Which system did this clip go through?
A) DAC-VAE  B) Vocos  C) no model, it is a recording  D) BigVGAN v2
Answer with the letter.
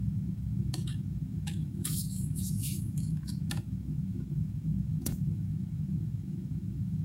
A